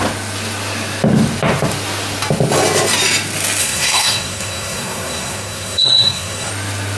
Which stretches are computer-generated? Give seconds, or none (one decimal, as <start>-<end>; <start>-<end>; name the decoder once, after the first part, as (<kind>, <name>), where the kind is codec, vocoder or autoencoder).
3.6-6.5 (codec, SNAC)